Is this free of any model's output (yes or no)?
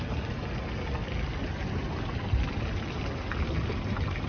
yes